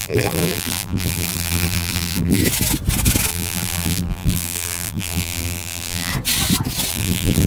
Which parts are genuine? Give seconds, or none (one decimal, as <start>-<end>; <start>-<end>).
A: 2.4-3.3; 6.1-6.9